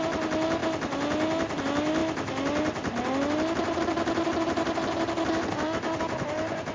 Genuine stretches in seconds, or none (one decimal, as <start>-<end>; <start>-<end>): 0.0-6.7